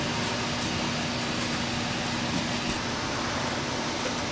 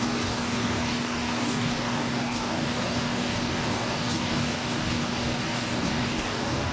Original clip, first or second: first